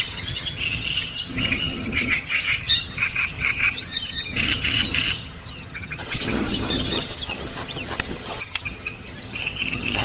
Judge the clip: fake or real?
fake